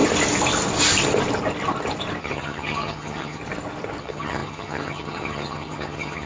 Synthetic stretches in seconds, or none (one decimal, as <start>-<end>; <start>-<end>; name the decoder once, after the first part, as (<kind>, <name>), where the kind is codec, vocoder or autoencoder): 2.2-3.4 (vocoder, HiFi-GAN); 4.0-6.3